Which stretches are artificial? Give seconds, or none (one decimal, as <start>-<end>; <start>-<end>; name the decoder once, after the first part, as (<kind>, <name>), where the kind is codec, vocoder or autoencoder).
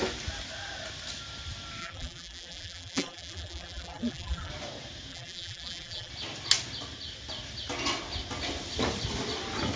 1.8-4.5 (vocoder, BigVGAN v2); 5.1-6.1